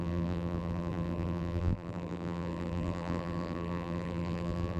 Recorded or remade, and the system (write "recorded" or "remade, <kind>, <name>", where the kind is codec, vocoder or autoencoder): remade, vocoder, BigVGAN v2